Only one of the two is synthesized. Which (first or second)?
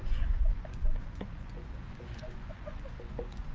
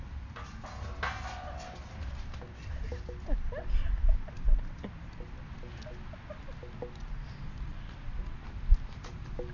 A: first